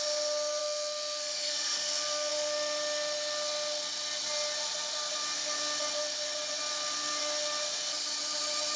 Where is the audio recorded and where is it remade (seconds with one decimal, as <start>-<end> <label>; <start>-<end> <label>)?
0.0-0.6 recorded; 0.6-2.3 remade; 2.3-8.8 recorded